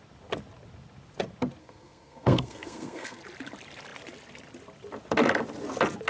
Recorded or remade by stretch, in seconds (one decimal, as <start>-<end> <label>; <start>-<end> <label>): 0.0-1.6 recorded; 1.6-3.2 remade; 3.2-6.1 recorded